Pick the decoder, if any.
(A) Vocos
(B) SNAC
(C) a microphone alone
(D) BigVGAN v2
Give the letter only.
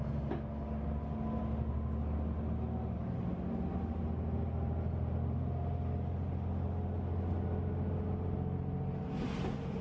C